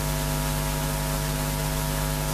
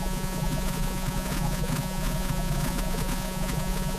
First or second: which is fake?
second